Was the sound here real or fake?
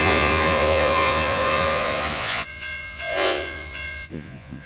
fake